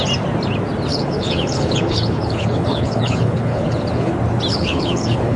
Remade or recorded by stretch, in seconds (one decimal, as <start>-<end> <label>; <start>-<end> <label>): 0.0-0.9 recorded; 0.9-4.1 remade; 4.1-4.5 recorded; 4.5-5.4 remade

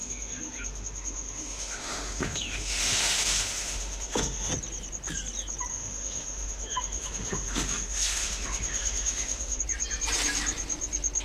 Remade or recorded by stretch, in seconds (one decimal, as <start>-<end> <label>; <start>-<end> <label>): 0.0-4.5 remade; 4.5-5.7 recorded; 5.7-9.6 remade; 9.6-11.2 recorded

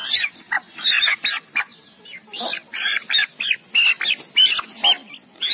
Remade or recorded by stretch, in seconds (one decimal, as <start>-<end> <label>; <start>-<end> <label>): 0.0-3.3 remade; 3.3-5.5 recorded

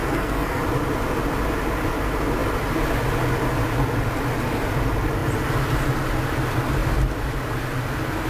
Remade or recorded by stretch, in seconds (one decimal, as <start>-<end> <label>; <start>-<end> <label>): 0.0-0.6 remade; 0.6-8.3 recorded

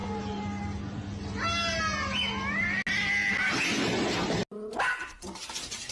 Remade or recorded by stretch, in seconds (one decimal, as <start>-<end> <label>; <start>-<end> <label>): 0.0-5.9 recorded